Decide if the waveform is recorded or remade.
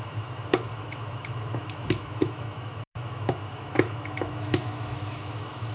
remade